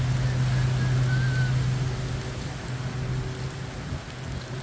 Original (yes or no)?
yes